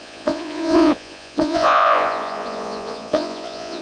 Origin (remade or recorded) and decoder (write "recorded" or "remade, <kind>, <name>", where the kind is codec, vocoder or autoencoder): remade, vocoder, Vocos